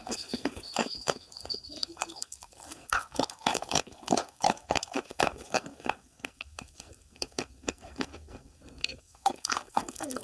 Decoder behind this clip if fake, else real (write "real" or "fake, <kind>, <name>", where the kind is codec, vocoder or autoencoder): fake, codec, SNAC